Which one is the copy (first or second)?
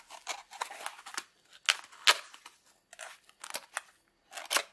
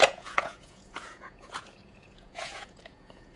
second